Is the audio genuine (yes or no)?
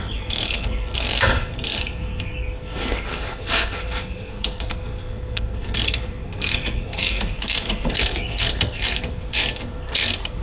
no